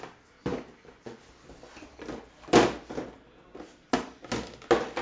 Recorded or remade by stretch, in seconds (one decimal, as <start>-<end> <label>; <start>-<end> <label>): 0.0-5.0 recorded